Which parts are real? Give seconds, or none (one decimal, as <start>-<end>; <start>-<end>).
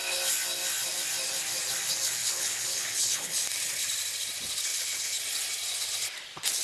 0.0-2.2; 3.4-4.7; 5.2-6.6